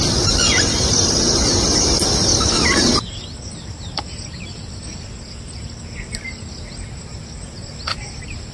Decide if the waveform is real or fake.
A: real